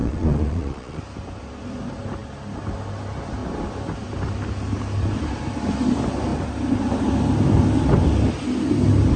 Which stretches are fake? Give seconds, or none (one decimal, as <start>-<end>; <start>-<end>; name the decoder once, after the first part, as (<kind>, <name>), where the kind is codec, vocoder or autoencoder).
0.0-1.0 (vocoder, Vocos)